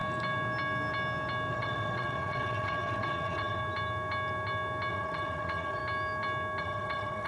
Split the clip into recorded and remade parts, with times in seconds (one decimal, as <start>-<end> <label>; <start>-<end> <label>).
0.0-1.5 recorded; 1.5-3.6 remade; 3.6-4.9 recorded; 4.9-5.8 remade; 5.8-6.6 recorded; 6.6-7.3 remade